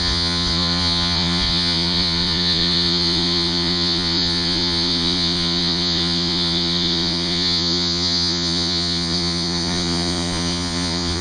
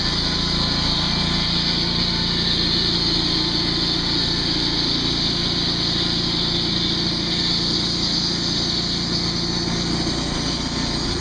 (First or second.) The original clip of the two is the second